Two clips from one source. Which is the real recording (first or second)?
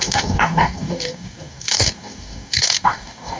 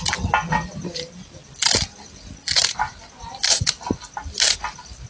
second